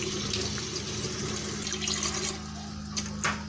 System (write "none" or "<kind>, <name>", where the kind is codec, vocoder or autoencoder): none